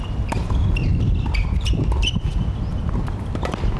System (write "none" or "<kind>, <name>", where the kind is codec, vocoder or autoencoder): none